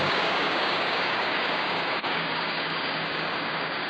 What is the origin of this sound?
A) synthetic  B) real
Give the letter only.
A